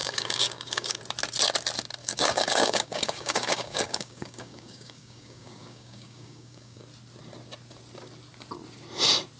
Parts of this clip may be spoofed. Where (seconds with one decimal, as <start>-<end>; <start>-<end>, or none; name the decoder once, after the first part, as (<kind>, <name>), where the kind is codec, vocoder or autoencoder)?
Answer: 0.0-1.0 (codec, DAC); 2.0-6.8